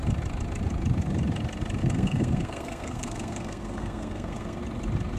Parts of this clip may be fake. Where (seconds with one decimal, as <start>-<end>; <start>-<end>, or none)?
1.8-4.6